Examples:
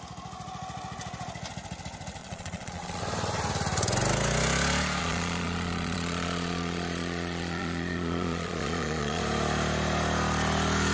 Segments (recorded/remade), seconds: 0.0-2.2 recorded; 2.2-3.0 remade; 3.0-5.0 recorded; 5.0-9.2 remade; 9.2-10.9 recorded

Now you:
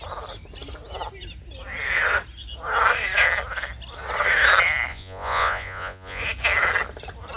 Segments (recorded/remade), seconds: 0.0-4.9 recorded; 4.9-6.2 remade; 6.2-7.4 recorded

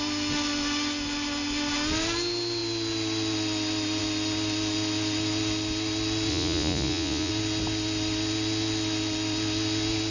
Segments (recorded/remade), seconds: 0.0-6.3 recorded; 6.3-7.3 remade; 7.3-10.1 recorded

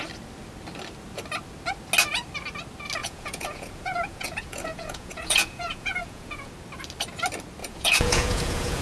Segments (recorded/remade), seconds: 0.0-3.0 recorded; 3.0-6.5 remade; 6.5-7.6 recorded; 7.6-8.8 remade